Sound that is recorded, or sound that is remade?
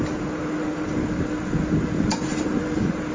recorded